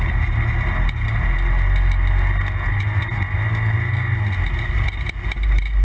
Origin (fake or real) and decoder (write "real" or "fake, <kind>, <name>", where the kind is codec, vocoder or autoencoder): real